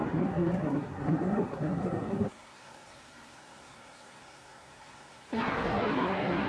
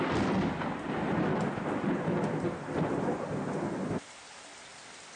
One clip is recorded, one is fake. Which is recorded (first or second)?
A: second